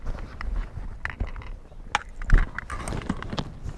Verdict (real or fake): real